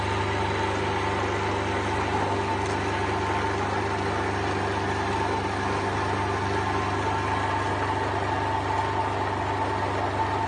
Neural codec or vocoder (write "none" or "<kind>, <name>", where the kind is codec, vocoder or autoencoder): none